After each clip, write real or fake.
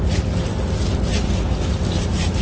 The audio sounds real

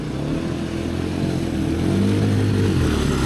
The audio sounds real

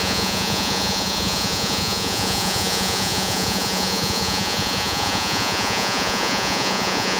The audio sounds fake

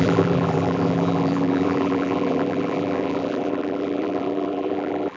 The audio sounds fake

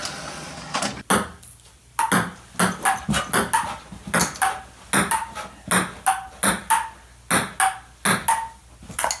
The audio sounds real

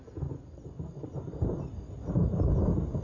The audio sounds real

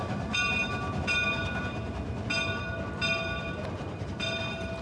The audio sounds real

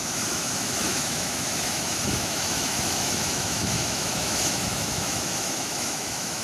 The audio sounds fake